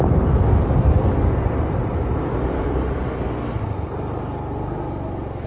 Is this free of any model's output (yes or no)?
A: yes